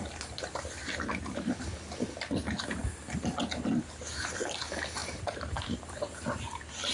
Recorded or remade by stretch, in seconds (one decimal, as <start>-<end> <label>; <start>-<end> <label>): 0.0-0.8 recorded; 0.8-1.5 remade; 1.5-5.0 recorded; 5.0-5.9 remade; 5.9-6.9 recorded